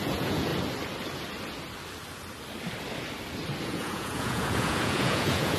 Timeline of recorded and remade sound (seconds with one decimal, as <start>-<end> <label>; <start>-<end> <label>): 0.0-0.5 remade; 0.5-3.6 recorded; 3.6-5.6 remade